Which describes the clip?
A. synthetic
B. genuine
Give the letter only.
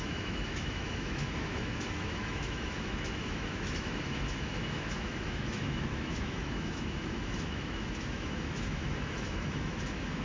A